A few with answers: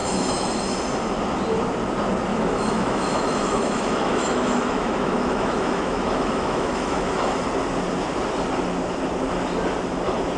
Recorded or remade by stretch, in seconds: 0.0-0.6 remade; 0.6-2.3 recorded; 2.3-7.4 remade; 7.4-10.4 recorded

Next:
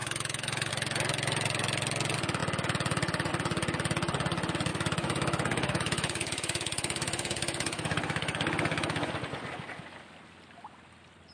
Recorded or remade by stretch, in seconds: 0.0-0.7 remade; 0.7-4.7 recorded; 4.7-9.1 remade; 9.1-11.3 recorded